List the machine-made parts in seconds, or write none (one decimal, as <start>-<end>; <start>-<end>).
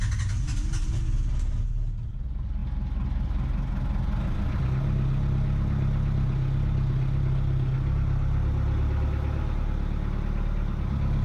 none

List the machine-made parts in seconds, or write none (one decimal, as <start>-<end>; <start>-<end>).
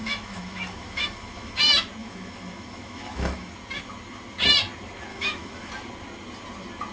0.0-1.6; 2.0-3.5; 5.1-5.7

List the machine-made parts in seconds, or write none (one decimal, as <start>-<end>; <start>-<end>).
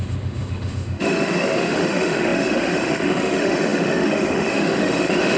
0.0-5.4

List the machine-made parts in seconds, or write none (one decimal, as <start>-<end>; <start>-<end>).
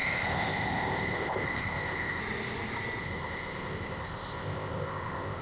0.0-2.2; 3.0-5.4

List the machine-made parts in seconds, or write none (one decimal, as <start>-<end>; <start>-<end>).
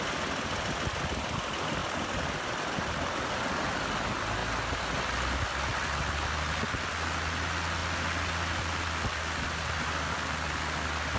none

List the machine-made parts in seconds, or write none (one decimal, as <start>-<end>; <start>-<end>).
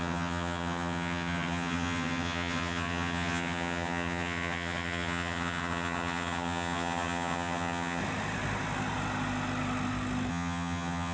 0.0-8.0; 10.3-11.1